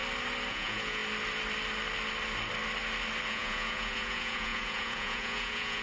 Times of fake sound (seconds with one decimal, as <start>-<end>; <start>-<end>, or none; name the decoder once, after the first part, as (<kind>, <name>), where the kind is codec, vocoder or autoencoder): 0.5-1.0 (vocoder, Vocos); 3.3-5.8